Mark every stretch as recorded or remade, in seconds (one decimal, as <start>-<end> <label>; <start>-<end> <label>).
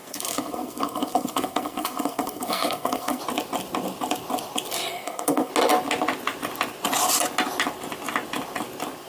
0.0-3.2 remade; 3.2-4.9 recorded; 4.9-5.5 remade; 5.5-9.1 recorded